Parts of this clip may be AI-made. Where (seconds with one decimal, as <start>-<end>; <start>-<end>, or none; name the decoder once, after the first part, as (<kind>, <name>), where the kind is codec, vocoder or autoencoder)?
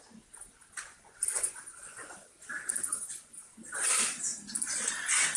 0.9-2.5 (vocoder, Vocos); 2.9-3.5